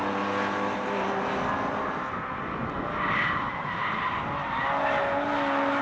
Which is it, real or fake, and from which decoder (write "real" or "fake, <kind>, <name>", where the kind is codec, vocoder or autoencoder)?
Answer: real